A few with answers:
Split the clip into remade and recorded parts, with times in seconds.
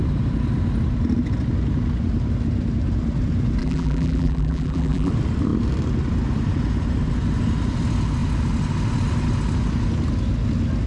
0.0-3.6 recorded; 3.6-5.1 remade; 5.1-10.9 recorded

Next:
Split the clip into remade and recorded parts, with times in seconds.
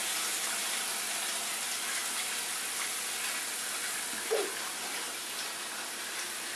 0.0-0.8 remade; 0.8-6.6 recorded